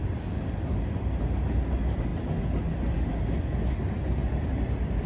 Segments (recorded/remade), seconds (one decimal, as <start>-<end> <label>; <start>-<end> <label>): 0.0-5.1 recorded